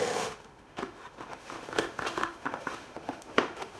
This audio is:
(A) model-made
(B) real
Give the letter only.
A